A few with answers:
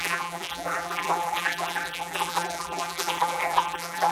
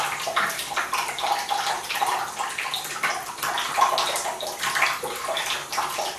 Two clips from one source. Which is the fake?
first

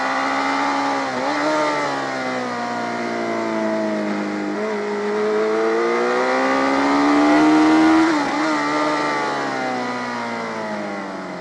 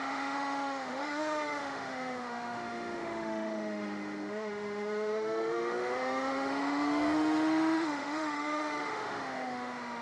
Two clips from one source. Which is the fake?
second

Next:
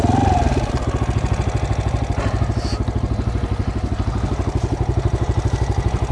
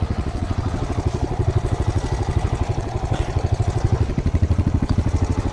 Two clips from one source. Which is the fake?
second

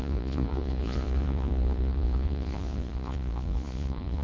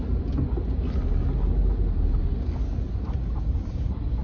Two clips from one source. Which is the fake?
first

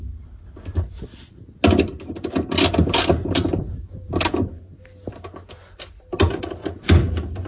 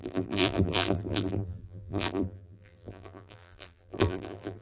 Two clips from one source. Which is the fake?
second